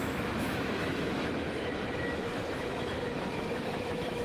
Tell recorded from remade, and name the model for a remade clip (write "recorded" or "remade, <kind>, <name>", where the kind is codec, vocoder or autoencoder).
remade, autoencoder, DAC-VAE